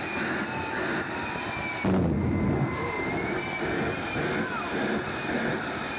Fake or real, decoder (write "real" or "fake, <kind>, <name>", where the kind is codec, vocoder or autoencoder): real